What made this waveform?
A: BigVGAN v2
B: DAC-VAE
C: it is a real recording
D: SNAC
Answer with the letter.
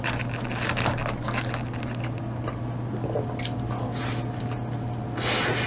C